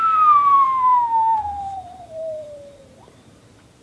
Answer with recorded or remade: remade